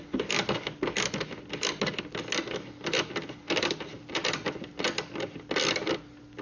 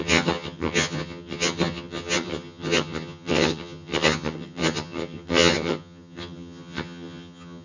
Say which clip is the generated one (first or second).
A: second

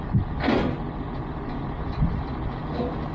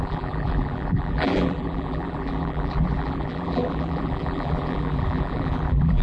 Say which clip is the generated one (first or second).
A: second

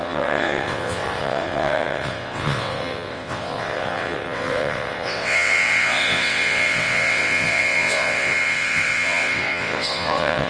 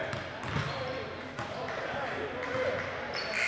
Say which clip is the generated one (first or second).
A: first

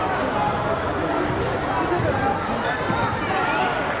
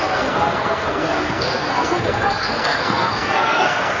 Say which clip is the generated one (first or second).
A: second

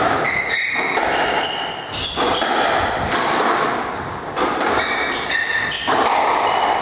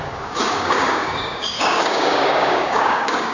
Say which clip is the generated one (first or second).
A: second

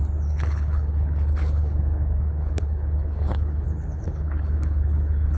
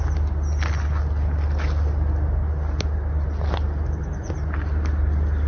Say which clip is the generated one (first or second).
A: first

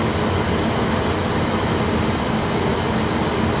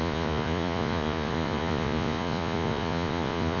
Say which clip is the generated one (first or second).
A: second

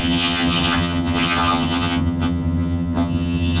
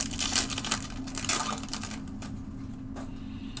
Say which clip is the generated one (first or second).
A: first